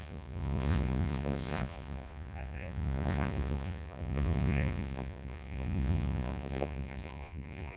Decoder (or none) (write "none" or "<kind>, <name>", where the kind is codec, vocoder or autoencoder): vocoder, Vocos